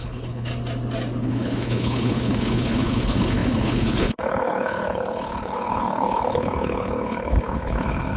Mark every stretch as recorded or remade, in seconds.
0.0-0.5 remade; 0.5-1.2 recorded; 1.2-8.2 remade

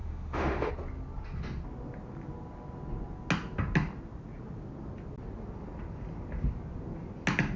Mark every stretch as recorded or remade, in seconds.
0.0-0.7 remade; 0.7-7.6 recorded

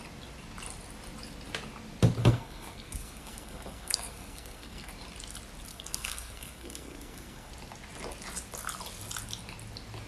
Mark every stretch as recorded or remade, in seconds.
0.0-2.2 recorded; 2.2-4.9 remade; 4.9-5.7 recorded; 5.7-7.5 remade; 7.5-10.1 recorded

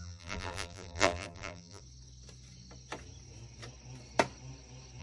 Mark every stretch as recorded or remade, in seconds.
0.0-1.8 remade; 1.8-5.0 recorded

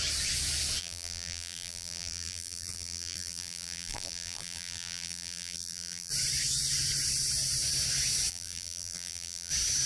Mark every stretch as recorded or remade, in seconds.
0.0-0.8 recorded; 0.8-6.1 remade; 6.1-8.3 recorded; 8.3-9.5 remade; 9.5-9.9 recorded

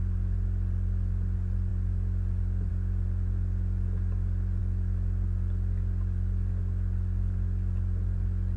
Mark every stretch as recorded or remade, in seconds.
0.0-8.6 recorded